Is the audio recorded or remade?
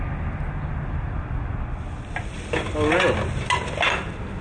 recorded